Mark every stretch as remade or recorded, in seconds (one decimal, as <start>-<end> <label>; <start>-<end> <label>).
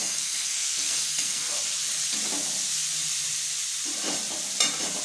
0.0-1.6 remade; 1.6-5.0 recorded